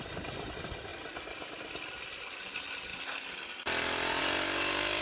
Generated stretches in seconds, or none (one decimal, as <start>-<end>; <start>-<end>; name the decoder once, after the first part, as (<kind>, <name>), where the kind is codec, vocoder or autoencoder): 0.9-1.7 (vocoder, BigVGAN v2); 2.9-4.2